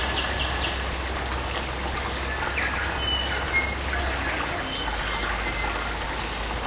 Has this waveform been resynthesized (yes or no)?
no